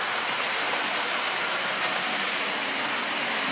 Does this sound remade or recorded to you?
remade